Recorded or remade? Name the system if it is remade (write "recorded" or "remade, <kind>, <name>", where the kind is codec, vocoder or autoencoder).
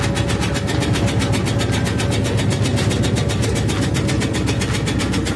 recorded